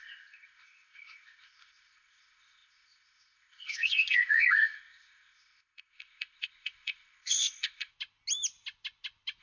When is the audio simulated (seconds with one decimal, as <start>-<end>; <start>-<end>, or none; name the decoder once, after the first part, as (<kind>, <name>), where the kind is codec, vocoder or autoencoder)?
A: 0.0-7.9 (codec, ZipCodec)